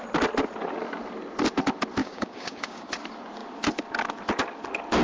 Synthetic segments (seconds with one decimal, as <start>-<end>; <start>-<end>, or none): 2.0-2.9